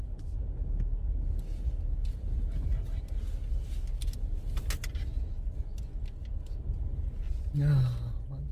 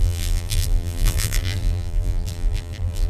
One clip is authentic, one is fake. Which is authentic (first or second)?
first